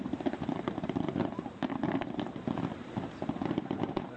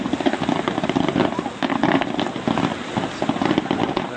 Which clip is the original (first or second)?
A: second